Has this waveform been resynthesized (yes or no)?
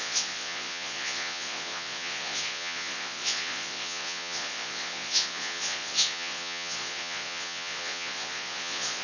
yes